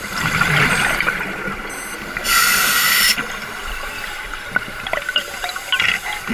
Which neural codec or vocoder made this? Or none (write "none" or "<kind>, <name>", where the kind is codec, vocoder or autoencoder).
vocoder, BigVGAN v2